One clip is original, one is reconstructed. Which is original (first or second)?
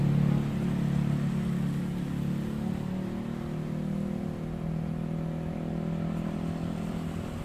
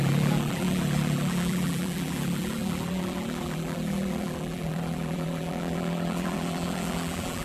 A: first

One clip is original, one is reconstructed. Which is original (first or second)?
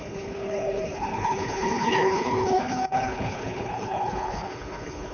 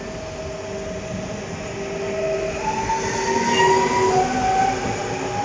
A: second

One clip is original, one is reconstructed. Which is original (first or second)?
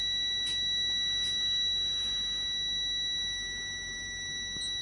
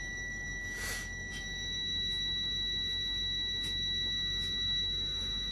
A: first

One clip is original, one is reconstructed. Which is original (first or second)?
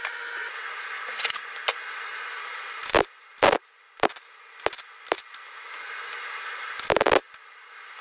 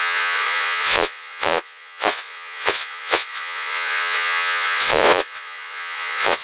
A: first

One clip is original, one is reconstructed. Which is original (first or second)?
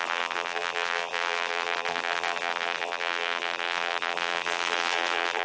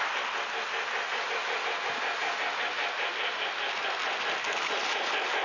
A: second